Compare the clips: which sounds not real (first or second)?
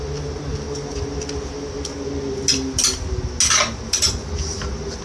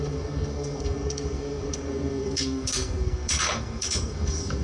second